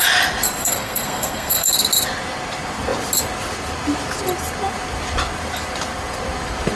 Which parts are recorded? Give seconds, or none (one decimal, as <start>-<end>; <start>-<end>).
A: 0.0-0.6; 1.7-6.8